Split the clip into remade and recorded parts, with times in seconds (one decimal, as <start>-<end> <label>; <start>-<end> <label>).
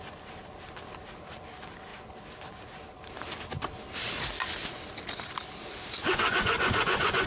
0.0-6.0 recorded; 6.0-7.3 remade